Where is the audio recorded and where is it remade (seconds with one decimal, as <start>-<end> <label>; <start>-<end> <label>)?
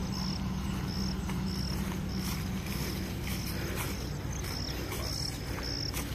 0.0-6.1 recorded